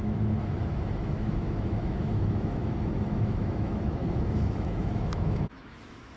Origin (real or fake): fake